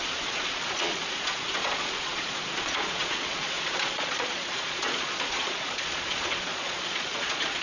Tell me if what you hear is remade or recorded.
remade